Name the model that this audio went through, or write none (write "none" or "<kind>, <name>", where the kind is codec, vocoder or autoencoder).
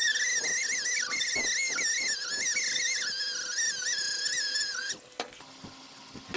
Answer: none